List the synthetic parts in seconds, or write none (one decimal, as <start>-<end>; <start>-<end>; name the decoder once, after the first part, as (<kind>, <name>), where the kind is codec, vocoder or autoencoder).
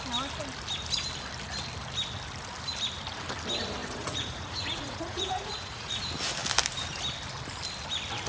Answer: 3.8-6.0 (vocoder, Vocos)